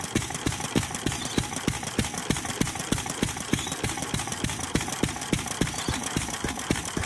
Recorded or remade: recorded